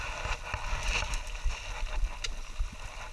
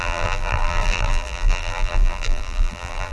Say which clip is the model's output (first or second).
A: second